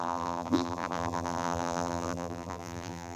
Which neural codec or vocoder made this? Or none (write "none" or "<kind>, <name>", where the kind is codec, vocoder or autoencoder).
vocoder, BigVGAN v2